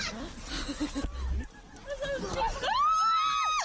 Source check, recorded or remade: recorded